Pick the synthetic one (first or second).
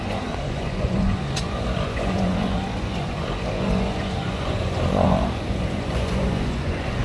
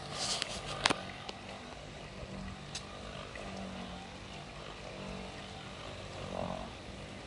first